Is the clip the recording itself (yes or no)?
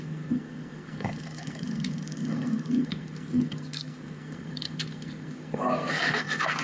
no